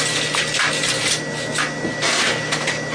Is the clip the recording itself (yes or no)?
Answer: yes